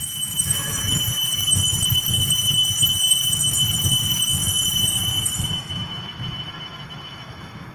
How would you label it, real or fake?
fake